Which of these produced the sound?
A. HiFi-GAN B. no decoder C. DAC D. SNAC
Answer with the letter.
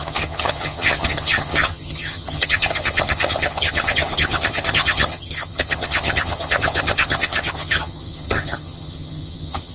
A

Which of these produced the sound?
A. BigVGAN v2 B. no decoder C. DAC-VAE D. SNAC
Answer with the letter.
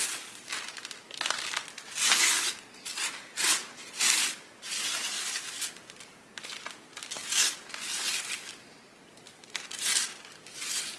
B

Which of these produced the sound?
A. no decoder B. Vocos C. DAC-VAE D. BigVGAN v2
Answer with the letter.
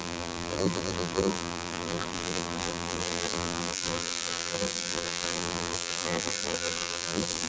D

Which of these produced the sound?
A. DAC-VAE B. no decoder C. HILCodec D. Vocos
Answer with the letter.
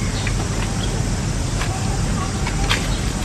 B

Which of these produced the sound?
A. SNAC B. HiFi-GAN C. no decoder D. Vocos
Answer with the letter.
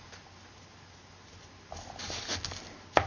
C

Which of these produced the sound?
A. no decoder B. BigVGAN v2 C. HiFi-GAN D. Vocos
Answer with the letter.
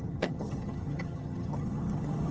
C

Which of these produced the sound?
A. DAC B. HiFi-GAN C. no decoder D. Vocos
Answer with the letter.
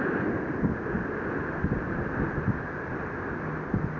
C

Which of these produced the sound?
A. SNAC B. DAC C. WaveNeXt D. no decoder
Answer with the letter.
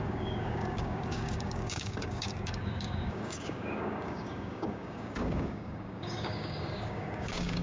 B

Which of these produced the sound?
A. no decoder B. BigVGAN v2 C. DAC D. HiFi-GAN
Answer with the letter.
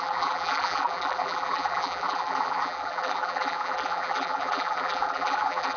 B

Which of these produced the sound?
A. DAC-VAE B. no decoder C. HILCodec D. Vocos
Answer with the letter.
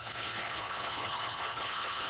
C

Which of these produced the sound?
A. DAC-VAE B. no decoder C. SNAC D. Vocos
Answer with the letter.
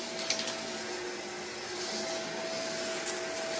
B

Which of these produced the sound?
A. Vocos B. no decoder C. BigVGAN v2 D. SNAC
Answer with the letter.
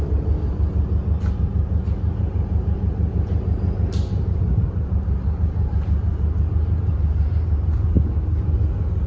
C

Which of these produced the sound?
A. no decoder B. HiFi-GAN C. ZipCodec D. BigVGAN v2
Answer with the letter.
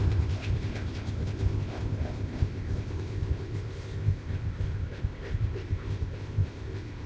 C